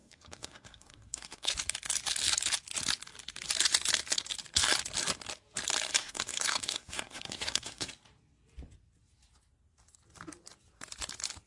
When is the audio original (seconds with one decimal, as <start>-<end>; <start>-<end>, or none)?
1.5-6.0; 7.9-11.5